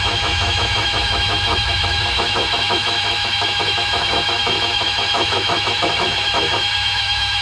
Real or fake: fake